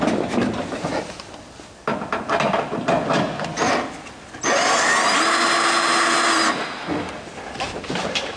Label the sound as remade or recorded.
recorded